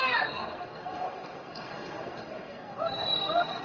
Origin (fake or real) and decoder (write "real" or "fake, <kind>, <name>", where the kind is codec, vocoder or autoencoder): fake, codec, SNAC